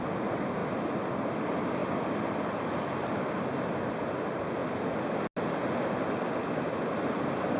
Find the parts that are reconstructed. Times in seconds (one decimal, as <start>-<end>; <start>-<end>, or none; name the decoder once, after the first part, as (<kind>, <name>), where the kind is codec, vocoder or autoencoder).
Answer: none